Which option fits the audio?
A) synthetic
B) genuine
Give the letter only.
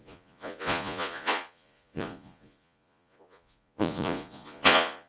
A